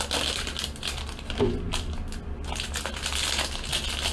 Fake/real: real